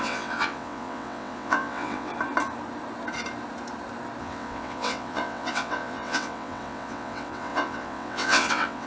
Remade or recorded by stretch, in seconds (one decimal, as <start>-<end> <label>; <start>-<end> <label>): 0.0-2.1 remade; 2.1-4.2 recorded; 4.2-8.9 remade